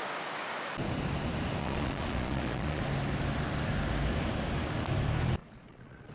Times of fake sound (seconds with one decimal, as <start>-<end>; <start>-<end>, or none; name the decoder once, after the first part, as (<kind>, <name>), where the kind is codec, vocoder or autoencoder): 1.6-2.8 (vocoder, Vocos); 5.4-6.1

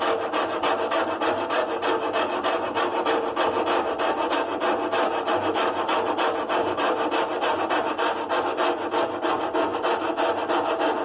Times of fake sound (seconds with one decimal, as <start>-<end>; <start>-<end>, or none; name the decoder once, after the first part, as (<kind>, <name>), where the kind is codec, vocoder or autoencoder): none

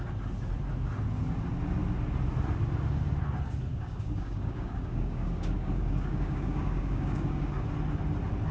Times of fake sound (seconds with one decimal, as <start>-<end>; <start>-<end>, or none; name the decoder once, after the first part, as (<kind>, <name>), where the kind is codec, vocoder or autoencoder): 3.7-7.5 (codec, DAC)

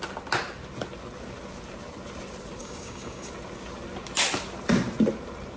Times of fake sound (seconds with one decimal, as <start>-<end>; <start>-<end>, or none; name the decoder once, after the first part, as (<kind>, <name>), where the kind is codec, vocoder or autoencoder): 2.6-3.3 (codec, DAC)

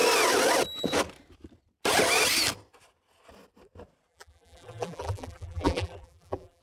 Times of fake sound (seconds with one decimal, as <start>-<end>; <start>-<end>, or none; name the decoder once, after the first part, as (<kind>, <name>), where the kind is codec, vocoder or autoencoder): 4.1-6.6 (vocoder, BigVGAN v2)

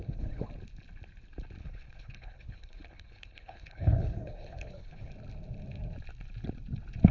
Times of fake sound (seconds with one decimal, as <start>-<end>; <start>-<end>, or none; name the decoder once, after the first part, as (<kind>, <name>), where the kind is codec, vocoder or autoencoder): 0.0-0.5 (codec, HILCodec); 1.6-5.1